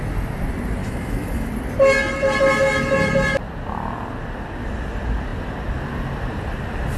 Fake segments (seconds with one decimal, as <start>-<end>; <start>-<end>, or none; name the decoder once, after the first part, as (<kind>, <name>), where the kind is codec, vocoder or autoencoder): 0.8-1.5 (autoencoder, DAC-VAE)